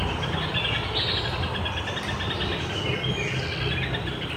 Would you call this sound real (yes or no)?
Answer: yes